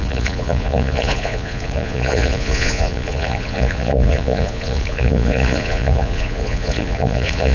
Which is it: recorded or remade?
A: remade